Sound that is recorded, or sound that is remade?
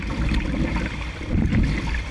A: recorded